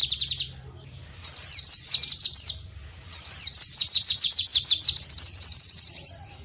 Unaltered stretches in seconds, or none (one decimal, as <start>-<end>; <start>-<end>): 0.0-3.8; 4.5-5.6